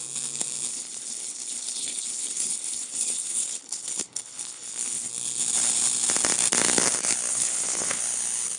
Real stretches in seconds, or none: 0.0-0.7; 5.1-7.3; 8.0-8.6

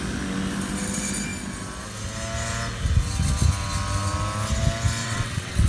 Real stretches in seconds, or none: 0.0-5.0

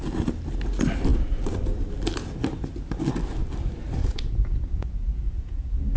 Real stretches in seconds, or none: 0.0-4.0

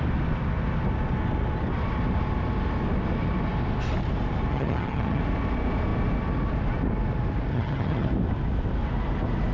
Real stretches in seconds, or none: 0.0-4.5; 5.2-7.5; 8.1-9.5

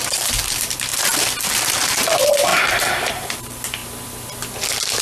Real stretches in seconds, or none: 0.9-1.5; 3.8-5.0

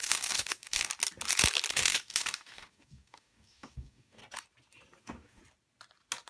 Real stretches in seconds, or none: 0.9-1.7; 4.2-5.0; 5.4-6.3

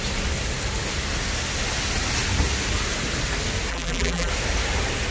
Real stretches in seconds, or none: 0.0-3.7; 4.3-5.1

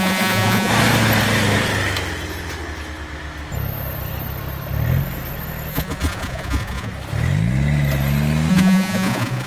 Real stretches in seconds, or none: 0.7-5.7; 6.9-8.5